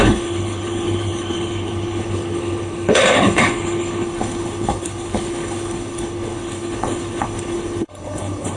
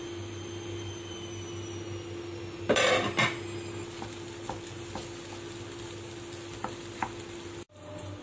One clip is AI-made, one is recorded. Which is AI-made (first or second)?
first